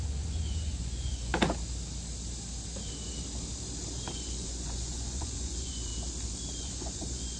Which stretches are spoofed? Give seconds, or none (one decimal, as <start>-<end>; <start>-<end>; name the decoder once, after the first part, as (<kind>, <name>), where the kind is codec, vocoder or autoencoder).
0.0-1.3 (vocoder, Vocos); 4.1-5.9; 6.6-7.4